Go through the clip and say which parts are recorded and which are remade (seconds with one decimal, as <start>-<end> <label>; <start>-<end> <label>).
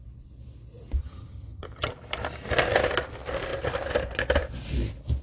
0.0-1.0 recorded; 1.0-1.9 remade; 1.9-5.2 recorded